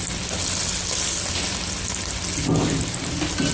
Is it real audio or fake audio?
real